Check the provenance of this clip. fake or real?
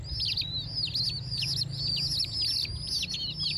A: real